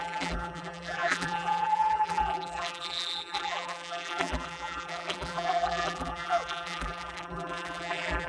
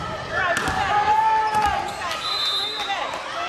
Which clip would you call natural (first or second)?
second